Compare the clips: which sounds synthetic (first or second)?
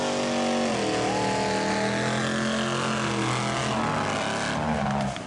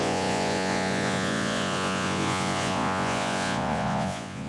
second